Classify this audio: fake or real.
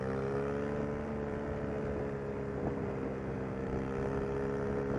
real